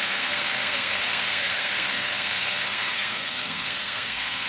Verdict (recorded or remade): remade